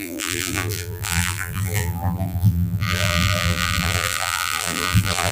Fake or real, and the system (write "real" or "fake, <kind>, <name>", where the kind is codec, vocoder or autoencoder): fake, vocoder, BigVGAN v2